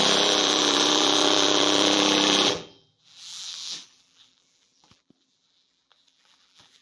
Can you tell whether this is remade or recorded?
remade